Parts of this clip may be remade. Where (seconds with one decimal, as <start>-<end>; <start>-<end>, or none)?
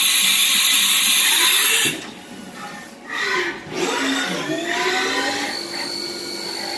none